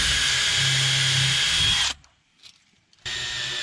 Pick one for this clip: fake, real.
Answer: real